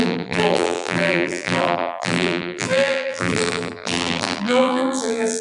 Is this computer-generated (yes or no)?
yes